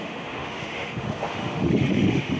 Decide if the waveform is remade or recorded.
remade